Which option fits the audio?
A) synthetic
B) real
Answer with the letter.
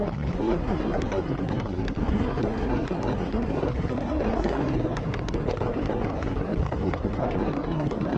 A